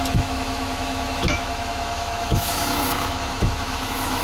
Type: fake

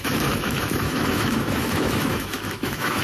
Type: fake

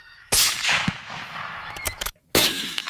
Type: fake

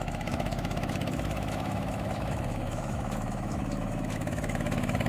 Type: fake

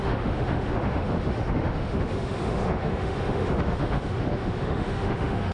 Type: fake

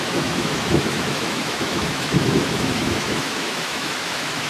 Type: fake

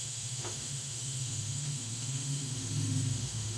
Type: fake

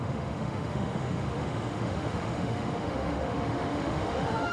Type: fake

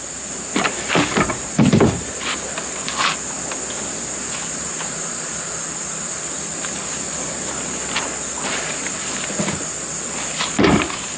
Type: real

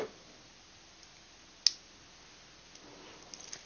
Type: real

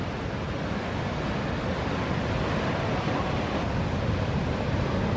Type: real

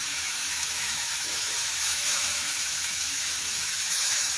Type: fake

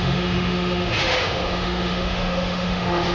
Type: fake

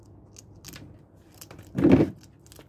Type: real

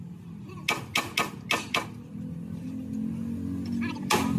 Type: real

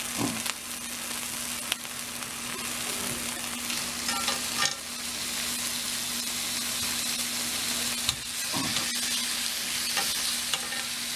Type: real